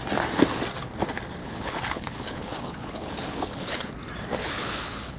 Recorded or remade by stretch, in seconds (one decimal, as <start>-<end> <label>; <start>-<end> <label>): 0.0-1.4 recorded; 1.4-3.9 remade; 3.9-4.4 recorded; 4.4-5.2 remade